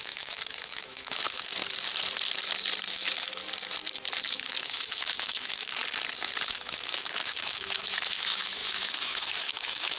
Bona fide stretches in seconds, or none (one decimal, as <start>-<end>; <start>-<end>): 1.6-2.9; 3.4-4.3; 5.8-6.5